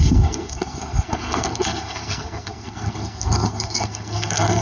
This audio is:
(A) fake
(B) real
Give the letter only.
A